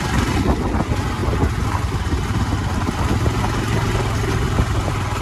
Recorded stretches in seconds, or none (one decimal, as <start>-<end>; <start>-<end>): 0.0-5.2